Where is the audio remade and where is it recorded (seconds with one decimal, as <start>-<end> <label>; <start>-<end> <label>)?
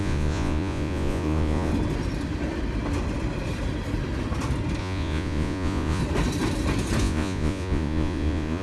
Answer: 0.0-1.7 remade; 1.7-4.8 recorded; 4.8-6.0 remade; 6.0-7.0 recorded; 7.0-8.6 remade